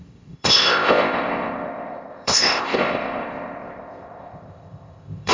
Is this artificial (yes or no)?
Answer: yes